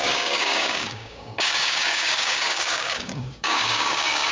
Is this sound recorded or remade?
remade